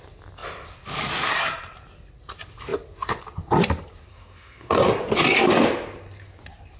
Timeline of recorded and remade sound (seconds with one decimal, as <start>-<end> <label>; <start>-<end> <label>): 0.0-4.1 recorded; 4.1-5.0 remade; 5.0-6.8 recorded